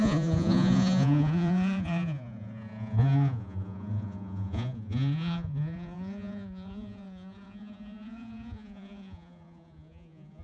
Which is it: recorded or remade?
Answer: remade